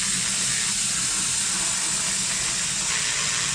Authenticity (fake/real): real